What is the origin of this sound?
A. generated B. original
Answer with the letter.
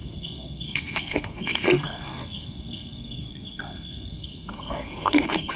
A